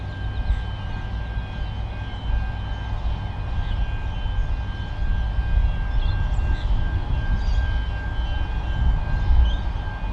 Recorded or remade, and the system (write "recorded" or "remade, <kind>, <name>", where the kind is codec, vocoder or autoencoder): recorded